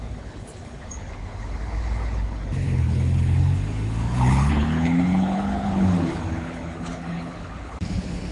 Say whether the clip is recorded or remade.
remade